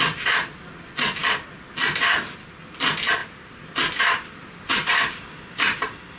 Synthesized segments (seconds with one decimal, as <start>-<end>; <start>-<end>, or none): 3.2-5.3